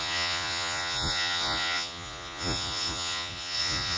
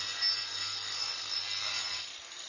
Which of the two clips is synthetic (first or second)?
first